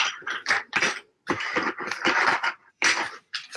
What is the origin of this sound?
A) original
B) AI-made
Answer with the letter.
B